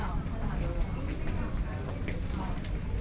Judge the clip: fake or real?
real